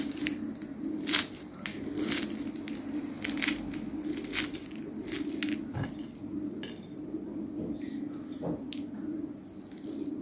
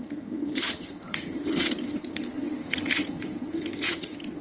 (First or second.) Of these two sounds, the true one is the first